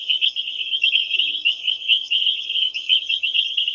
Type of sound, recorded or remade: remade